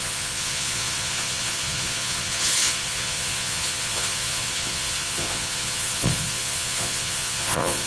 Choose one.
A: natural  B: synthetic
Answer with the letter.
B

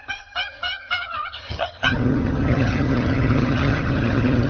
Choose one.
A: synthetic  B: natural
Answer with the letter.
A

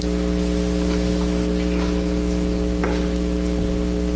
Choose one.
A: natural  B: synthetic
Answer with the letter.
A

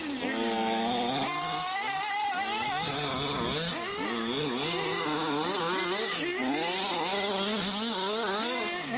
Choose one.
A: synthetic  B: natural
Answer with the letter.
B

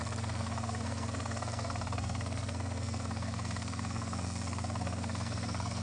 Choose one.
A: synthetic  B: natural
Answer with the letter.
A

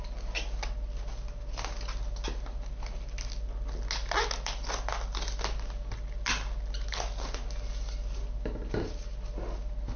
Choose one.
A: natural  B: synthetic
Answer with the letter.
A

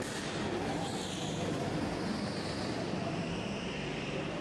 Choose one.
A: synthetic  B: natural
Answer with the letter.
B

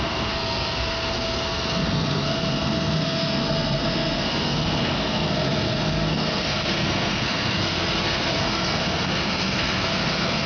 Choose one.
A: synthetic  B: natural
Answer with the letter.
A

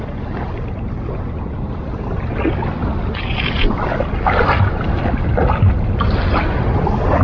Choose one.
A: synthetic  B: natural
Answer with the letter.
B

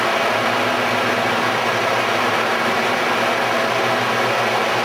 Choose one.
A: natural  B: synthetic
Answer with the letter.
A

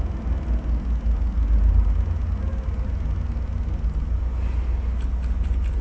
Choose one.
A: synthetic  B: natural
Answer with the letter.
B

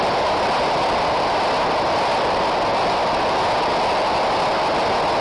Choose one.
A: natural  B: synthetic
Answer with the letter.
A